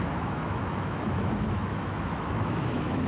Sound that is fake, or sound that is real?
fake